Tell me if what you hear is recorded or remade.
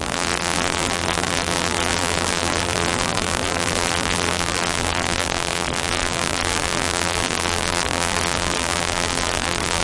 remade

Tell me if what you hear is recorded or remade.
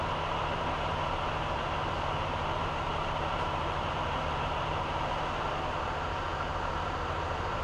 remade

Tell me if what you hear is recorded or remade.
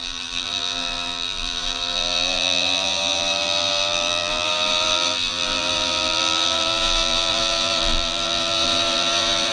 remade